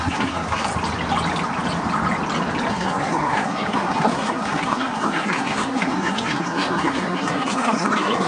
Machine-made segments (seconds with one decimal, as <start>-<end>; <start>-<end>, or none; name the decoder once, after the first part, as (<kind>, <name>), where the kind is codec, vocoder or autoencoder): 0.0-0.7 (codec, SNAC); 2.7-8.3